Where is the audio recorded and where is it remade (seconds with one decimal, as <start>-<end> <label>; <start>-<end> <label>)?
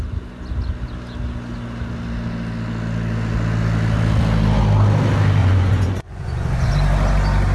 0.0-5.4 recorded; 5.4-6.7 remade; 6.7-7.5 recorded